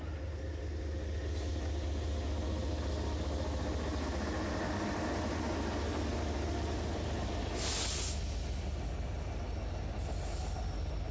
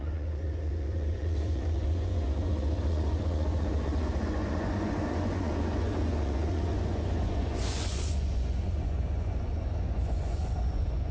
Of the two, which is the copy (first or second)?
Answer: second